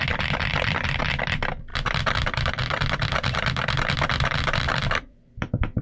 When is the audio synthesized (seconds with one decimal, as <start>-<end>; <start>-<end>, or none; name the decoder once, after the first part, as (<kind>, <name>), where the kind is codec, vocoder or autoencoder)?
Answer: 0.5-1.0 (vocoder, BigVGAN v2); 1.7-5.2

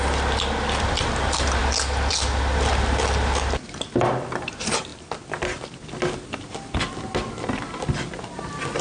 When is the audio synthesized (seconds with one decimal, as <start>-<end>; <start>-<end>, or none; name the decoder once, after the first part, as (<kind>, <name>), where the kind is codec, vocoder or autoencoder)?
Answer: none

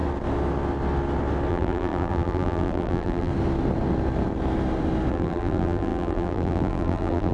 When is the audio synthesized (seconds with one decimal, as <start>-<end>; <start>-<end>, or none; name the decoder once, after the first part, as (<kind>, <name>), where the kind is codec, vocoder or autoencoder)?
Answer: 1.5-3.3 (vocoder, BigVGAN v2); 5.1-7.3

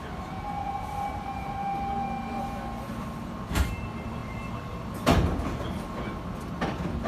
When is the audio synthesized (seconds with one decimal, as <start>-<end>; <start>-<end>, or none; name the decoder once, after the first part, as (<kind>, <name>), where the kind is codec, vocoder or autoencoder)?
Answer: 4.2-4.9 (vocoder, BigVGAN v2)

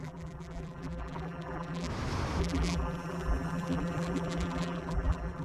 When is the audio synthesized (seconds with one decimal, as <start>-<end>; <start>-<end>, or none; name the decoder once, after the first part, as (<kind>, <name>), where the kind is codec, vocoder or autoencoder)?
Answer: 0.0-1.9 (vocoder, BigVGAN v2); 2.4-5.4